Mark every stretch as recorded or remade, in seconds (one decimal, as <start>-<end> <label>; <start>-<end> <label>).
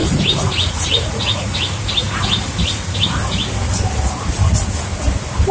0.0-1.8 remade; 1.8-5.5 recorded